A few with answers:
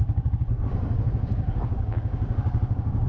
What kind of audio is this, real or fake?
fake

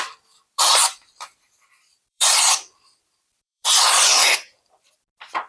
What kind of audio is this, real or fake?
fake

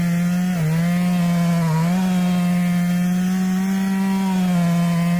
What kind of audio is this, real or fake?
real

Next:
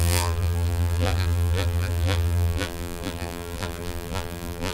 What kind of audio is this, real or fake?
fake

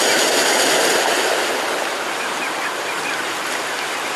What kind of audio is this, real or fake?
real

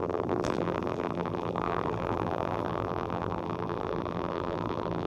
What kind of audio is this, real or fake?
fake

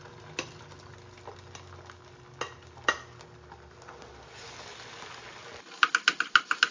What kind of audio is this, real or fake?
real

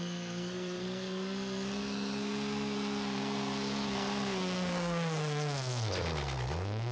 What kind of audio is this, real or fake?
fake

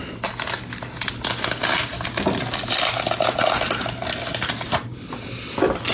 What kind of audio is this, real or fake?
real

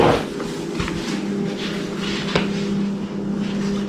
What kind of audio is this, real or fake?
real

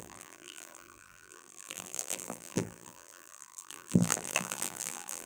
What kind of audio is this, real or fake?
fake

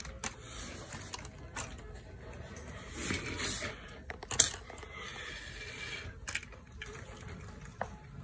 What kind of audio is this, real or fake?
real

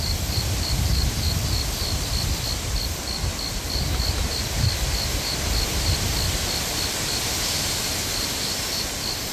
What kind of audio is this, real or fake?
real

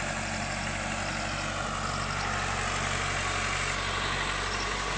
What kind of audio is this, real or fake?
real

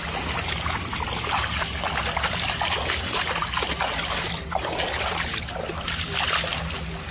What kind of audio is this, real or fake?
real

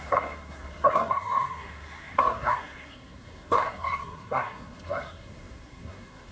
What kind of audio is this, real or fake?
fake